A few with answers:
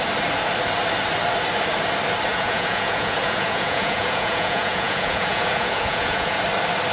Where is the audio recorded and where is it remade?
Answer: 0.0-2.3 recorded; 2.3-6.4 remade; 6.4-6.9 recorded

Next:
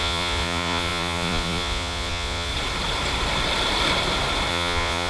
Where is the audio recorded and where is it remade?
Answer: 0.0-2.5 remade; 2.5-4.5 recorded; 4.5-5.1 remade

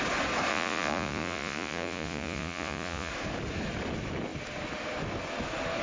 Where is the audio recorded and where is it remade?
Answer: 0.0-0.5 recorded; 0.5-3.1 remade; 3.1-5.8 recorded

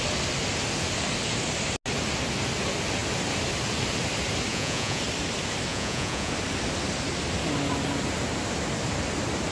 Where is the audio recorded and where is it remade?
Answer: 0.0-4.5 recorded; 4.5-5.0 remade; 5.0-5.7 recorded; 5.7-6.3 remade; 6.3-9.5 recorded

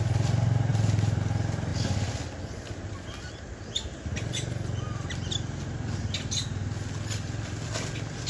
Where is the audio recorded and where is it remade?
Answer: 0.0-8.3 recorded